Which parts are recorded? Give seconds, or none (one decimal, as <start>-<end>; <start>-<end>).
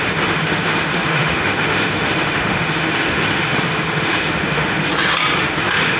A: 4.9-5.4